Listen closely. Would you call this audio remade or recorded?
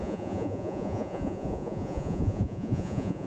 remade